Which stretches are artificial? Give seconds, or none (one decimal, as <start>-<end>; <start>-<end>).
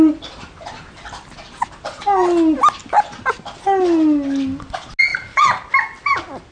none